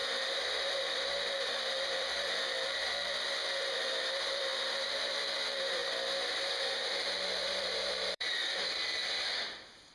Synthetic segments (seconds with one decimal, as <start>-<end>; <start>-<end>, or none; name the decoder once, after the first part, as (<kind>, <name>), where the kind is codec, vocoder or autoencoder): 0.0-5.8 (vocoder, BigVGAN v2); 6.3-8.4